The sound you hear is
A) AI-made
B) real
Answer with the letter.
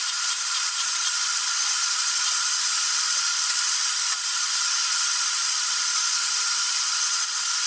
A